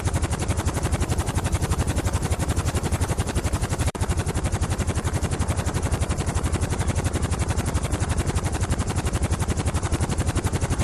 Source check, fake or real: fake